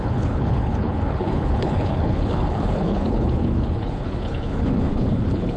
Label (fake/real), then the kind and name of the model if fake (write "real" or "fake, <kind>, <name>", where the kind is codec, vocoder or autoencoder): fake, codec, HILCodec